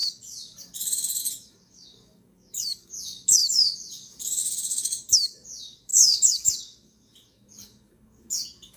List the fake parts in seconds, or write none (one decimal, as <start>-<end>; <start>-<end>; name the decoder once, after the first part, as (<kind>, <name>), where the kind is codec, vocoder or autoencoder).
0.0-8.8 (codec, DAC)